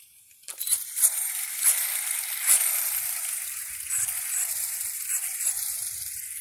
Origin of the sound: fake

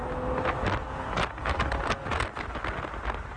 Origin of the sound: real